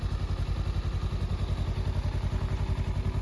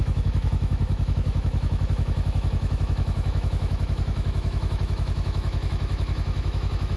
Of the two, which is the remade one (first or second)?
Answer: second